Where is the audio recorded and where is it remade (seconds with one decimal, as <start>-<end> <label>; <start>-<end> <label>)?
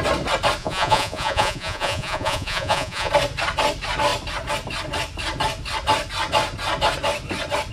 0.0-0.6 recorded; 0.6-3.1 remade; 3.1-7.7 recorded